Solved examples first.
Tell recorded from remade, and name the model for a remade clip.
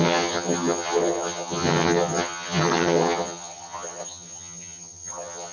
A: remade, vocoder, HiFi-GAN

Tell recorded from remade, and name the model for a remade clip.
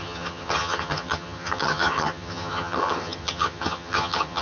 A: remade, vocoder, HiFi-GAN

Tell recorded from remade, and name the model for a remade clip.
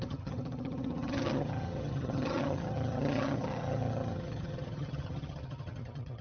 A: remade, vocoder, HiFi-GAN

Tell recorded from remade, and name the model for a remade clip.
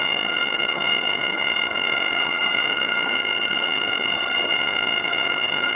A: remade, vocoder, HiFi-GAN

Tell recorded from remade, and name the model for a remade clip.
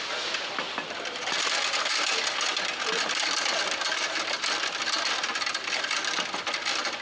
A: recorded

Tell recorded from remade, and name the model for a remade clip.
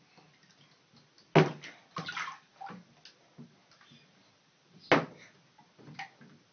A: recorded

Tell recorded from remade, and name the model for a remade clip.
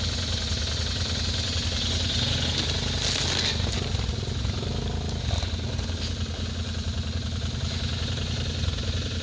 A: recorded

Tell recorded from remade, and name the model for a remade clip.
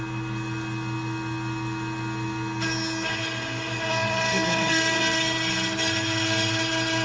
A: recorded